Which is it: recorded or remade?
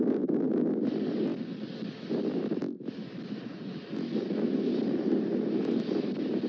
recorded